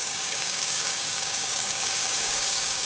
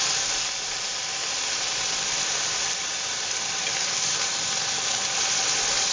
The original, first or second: second